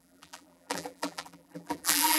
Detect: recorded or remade remade